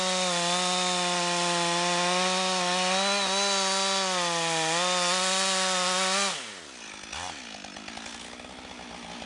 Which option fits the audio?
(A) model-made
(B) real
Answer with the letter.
B